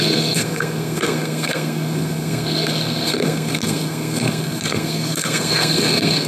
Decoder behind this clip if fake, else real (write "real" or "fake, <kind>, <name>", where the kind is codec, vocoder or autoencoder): fake, codec, SNAC